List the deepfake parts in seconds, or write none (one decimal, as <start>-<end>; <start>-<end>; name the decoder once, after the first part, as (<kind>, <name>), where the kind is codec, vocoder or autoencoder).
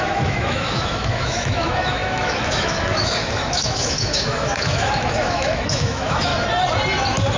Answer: 0.0-6.3 (autoencoder, DAC-VAE)